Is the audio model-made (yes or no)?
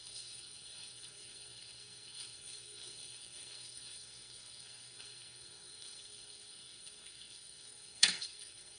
yes